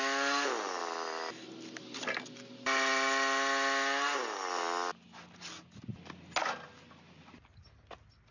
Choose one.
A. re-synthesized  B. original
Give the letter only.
B